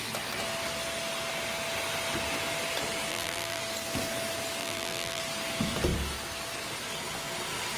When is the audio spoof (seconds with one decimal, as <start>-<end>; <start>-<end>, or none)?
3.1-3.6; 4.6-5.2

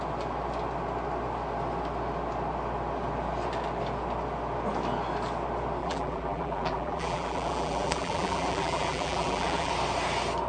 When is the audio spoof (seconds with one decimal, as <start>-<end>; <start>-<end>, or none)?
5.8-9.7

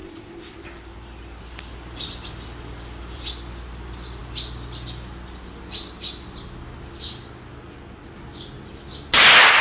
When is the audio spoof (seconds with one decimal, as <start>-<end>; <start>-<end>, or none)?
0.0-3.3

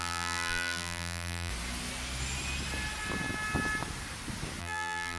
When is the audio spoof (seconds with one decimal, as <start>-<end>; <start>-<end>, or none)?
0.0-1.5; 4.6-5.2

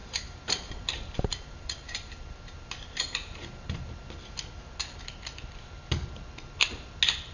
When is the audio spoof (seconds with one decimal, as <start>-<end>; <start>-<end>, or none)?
0.0-3.9

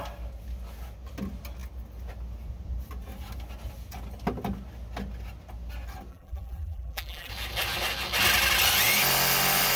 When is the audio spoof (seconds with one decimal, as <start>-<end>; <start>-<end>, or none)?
6.1-7.3

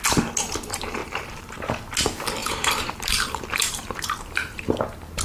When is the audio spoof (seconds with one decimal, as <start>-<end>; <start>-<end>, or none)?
1.0-1.6; 2.4-4.8